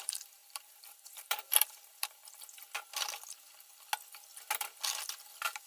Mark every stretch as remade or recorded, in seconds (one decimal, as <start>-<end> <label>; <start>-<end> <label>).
0.0-2.2 remade; 2.2-5.7 recorded